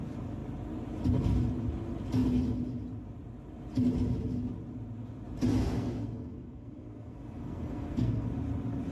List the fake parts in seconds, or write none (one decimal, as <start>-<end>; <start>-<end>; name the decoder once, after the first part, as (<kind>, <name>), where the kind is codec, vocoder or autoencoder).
5.6-8.3 (codec, SNAC)